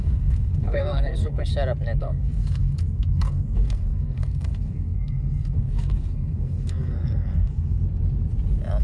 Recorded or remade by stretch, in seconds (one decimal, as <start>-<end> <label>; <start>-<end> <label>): 0.0-1.5 remade; 1.5-2.0 recorded; 2.0-7.8 remade; 7.8-8.8 recorded